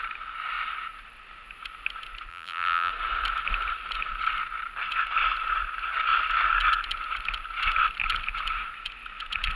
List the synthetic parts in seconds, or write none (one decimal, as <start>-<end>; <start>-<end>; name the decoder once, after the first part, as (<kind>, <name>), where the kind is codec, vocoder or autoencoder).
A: 2.3-2.9 (vocoder, BigVGAN v2)